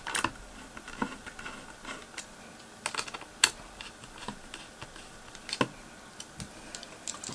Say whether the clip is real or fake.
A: real